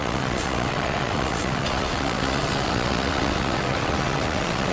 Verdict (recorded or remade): remade